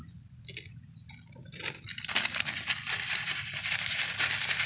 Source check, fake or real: fake